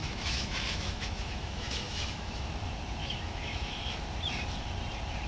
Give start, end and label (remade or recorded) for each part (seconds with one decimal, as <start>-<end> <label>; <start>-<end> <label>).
0.0-2.5 remade; 2.5-3.0 recorded; 3.0-3.7 remade; 3.7-5.3 recorded